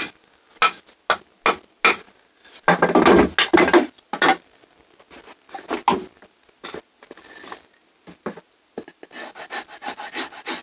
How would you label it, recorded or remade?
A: recorded